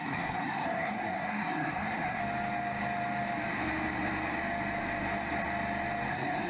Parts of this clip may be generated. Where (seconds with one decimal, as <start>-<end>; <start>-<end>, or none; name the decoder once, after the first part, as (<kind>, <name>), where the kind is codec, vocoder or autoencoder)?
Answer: 0.0-2.2 (codec, SNAC); 6.1-6.5